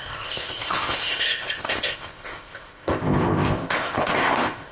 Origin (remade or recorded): remade